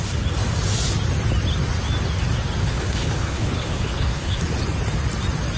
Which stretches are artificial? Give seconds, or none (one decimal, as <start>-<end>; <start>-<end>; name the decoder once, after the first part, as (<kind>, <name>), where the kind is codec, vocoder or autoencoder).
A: 2.6-4.4 (codec, HILCodec)